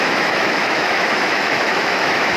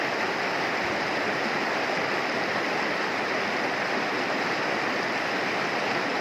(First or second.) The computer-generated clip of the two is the first